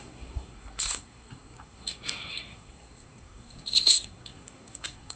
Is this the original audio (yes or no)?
no